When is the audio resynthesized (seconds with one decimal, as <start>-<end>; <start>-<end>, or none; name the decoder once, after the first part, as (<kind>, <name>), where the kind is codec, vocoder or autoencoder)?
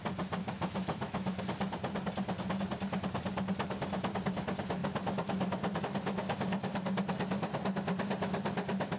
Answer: 0.4-1.4 (autoencoder, DAC-VAE)